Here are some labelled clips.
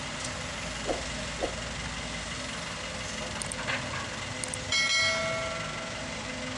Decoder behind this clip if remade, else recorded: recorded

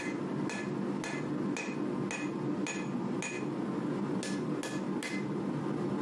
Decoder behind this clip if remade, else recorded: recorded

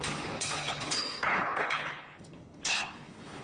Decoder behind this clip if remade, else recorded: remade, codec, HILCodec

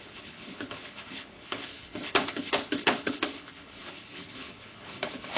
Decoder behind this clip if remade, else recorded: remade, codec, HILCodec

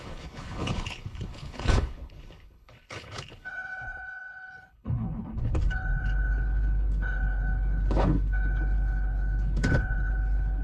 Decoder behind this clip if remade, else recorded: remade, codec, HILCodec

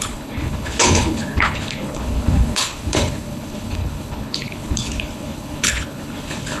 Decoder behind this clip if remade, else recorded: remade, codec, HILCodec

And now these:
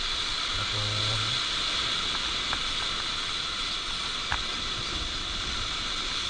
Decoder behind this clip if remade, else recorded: recorded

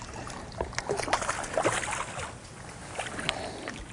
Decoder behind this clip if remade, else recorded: recorded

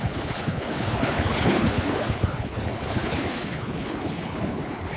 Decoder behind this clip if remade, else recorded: remade, codec, HILCodec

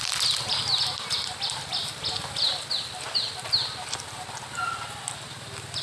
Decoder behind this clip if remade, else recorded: recorded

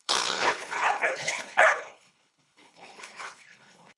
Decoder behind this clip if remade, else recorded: remade, codec, HILCodec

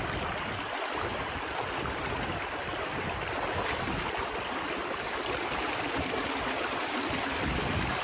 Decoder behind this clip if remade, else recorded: recorded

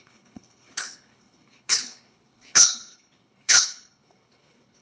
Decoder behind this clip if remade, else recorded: remade, codec, HILCodec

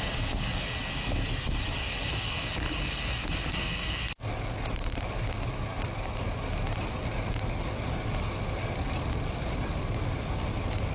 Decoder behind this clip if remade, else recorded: recorded